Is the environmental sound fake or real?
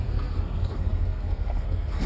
fake